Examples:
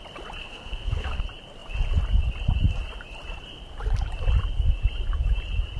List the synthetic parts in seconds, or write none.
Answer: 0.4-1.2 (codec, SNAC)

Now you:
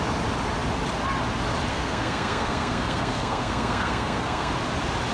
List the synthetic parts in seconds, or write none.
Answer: 1.7-4.5 (codec, SNAC)

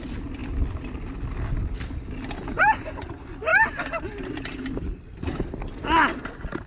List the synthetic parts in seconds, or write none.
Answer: none